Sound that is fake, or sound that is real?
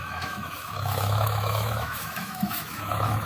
fake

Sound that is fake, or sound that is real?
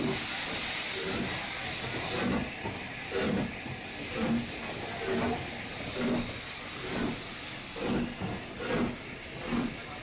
real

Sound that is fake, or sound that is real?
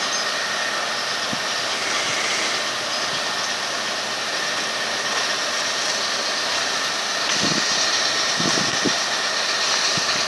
real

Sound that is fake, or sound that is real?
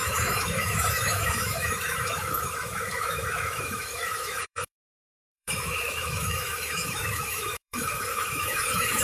fake